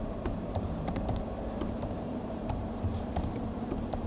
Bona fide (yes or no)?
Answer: no